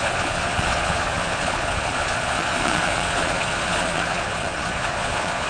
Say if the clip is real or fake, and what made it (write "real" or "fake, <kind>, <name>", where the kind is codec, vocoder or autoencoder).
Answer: fake, vocoder, Vocos